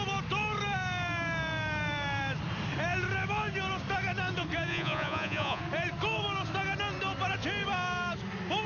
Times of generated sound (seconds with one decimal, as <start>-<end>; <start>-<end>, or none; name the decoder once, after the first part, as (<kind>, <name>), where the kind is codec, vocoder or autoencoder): 4.7-5.6 (vocoder, Vocos)